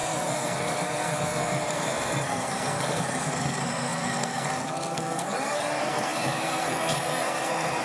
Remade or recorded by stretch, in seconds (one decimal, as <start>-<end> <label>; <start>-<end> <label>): 0.0-7.8 remade